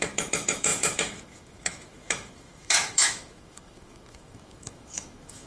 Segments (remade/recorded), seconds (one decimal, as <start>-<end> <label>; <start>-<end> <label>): 0.0-5.5 remade